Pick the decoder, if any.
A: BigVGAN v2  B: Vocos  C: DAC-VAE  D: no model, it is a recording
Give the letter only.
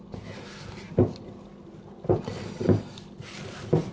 D